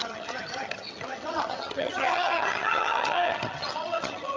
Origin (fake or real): fake